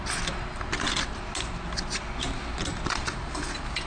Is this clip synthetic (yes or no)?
no